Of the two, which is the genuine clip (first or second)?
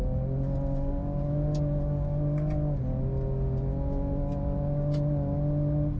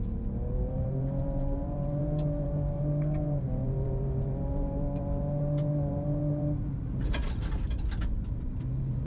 first